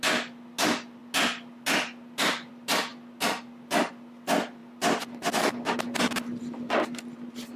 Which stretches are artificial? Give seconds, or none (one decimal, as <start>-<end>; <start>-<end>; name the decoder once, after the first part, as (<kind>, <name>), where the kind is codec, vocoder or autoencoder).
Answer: none